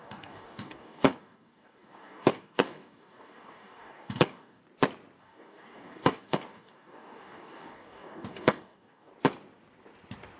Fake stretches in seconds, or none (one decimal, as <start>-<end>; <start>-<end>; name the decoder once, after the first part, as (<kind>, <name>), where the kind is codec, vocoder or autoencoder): 0.0-4.6 (codec, DAC); 5.2-9.1